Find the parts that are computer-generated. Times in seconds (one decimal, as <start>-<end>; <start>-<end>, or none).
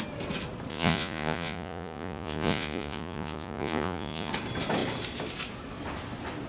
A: 0.7-4.3